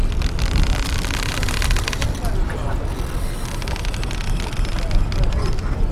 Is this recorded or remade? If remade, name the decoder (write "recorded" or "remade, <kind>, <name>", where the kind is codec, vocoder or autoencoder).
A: recorded